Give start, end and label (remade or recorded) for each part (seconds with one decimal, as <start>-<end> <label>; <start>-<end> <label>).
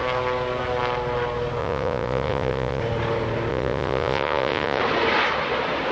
0.0-1.6 recorded; 1.6-2.8 remade; 2.8-3.5 recorded; 3.5-4.8 remade; 4.8-5.9 recorded